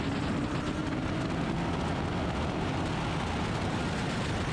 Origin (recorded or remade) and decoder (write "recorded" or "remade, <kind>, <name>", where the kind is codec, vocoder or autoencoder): recorded